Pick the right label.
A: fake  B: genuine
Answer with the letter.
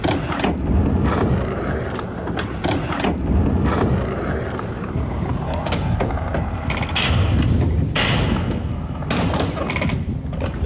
B